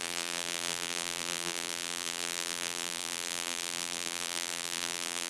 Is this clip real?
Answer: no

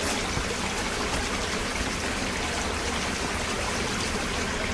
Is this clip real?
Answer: yes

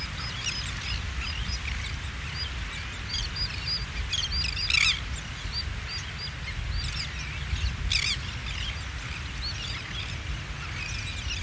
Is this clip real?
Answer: yes